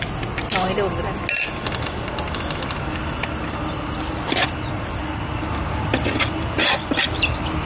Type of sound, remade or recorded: recorded